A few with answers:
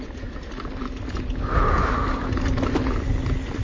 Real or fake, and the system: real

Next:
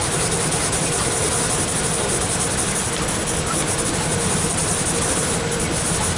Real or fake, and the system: real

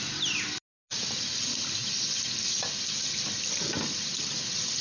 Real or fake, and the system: real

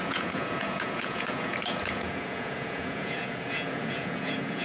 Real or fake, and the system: fake, vocoder, Vocos